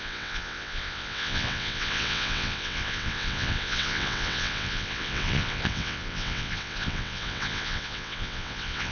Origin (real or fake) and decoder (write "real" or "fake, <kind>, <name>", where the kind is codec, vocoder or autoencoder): fake, vocoder, WaveNeXt